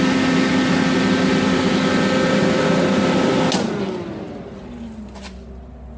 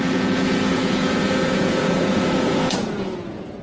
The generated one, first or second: second